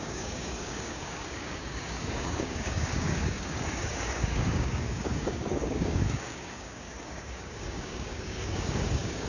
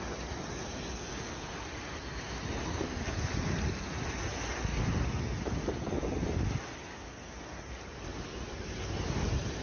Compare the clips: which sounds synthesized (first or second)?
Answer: first